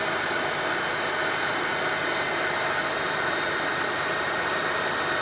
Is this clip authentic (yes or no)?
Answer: yes